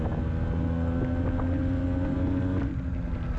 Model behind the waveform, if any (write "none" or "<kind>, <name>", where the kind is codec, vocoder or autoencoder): none